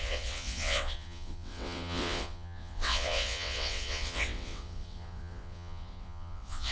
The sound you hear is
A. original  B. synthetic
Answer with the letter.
B